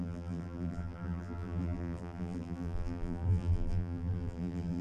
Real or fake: fake